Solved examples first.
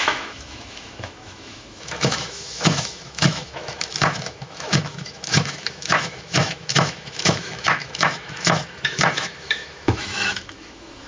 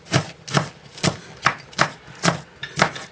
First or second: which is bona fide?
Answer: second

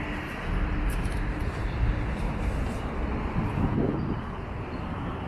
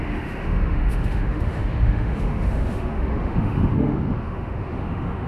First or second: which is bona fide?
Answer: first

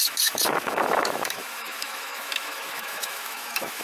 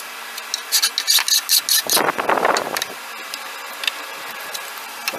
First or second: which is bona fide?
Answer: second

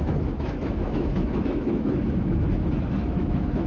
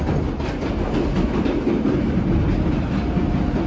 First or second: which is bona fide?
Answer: second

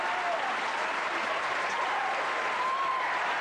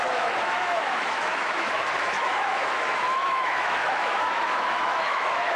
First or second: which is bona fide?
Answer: first